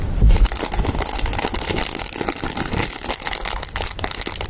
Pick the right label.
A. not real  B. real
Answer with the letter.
B